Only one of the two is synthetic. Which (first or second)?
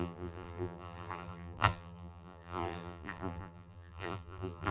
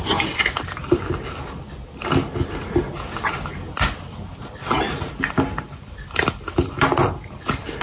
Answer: first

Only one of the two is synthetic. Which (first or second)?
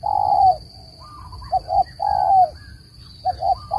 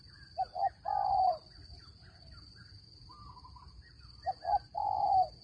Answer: second